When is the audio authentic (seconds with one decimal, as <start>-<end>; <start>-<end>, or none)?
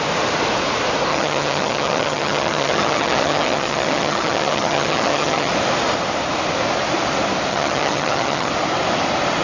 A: 0.0-1.1; 5.5-7.5; 8.5-9.4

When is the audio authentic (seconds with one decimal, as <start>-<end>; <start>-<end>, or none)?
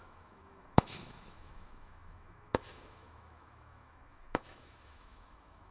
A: none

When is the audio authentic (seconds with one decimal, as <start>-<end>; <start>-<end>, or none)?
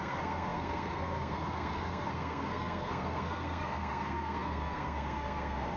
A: none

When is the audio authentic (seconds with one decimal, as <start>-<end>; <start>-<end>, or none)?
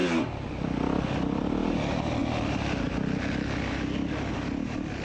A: 0.0-5.0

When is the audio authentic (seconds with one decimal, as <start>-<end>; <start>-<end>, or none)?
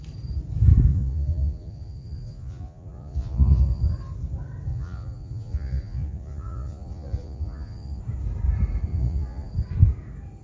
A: 0.0-0.9; 3.8-4.7; 8.0-8.9; 9.5-10.4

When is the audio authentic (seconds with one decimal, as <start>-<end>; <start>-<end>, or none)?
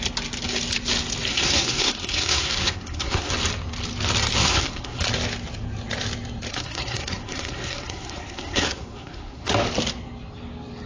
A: 0.0-1.3; 3.3-4.4; 5.0-6.5; 9.5-10.9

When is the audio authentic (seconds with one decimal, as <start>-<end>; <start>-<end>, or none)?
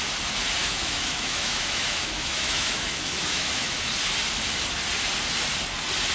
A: 0.0-0.6; 3.9-6.1